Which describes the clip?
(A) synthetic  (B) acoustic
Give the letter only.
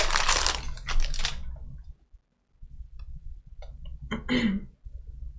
B